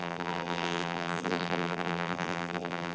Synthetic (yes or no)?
yes